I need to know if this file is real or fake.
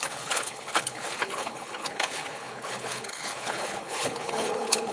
fake